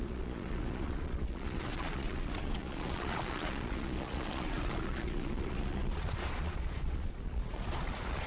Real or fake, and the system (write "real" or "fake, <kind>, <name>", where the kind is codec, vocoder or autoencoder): fake, vocoder, Vocos